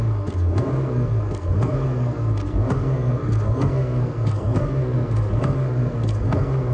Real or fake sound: fake